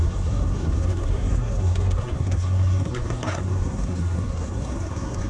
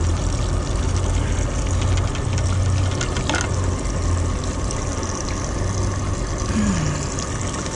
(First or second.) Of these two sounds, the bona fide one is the second